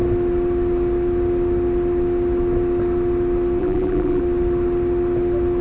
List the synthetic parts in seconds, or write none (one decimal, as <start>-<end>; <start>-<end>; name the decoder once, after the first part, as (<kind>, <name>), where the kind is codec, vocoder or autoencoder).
3.6-4.2 (vocoder, BigVGAN v2)